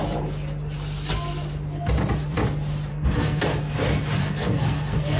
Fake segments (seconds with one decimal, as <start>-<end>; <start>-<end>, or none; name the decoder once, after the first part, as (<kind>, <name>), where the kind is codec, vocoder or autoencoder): 2.9-3.4 (codec, SNAC); 4.2-5.2

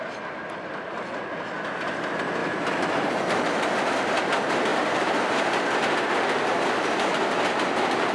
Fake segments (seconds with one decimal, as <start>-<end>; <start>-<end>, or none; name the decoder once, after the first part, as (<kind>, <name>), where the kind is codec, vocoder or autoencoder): 2.4-3.2 (vocoder, BigVGAN v2); 4.7-5.8

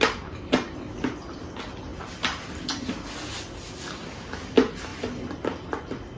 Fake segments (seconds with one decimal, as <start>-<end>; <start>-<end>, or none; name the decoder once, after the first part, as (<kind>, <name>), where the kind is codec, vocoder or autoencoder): none

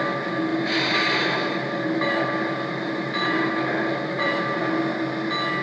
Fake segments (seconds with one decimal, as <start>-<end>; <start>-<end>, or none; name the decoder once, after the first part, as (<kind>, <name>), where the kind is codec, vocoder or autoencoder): 0.5-3.5 (vocoder, BigVGAN v2); 3.9-4.6

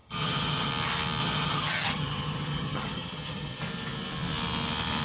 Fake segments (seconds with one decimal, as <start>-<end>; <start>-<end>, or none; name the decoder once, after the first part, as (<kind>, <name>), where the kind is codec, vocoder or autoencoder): 0.0-0.7 (vocoder, HiFi-GAN); 1.2-3.6